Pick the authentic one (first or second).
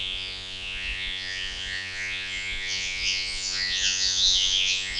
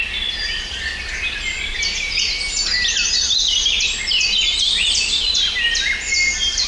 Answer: second